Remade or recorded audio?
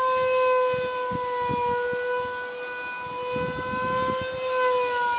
recorded